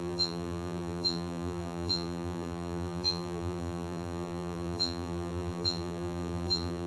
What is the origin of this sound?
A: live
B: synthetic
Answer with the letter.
B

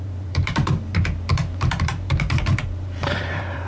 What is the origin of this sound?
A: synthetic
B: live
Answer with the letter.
A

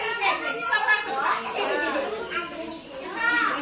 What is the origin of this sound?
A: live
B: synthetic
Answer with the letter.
A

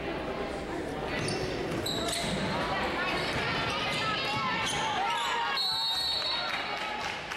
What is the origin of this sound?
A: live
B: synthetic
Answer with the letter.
A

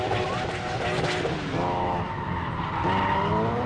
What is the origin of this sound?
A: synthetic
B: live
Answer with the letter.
B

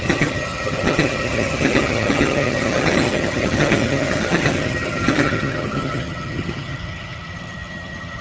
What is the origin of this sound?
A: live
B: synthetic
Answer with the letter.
B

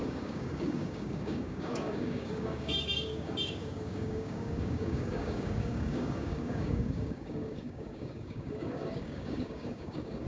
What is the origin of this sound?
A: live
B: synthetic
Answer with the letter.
B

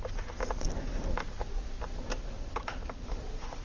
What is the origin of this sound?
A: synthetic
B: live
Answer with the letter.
B